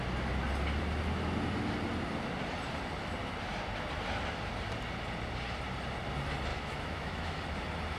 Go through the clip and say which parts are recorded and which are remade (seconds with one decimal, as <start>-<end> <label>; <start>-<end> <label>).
0.0-6.5 recorded; 6.5-7.4 remade; 7.4-8.0 recorded